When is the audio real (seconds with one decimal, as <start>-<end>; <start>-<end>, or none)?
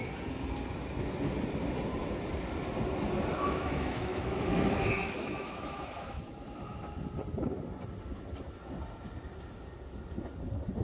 0.0-3.3; 6.2-10.8